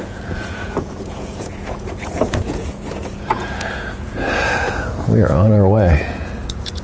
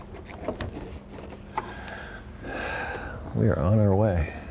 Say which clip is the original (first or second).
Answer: second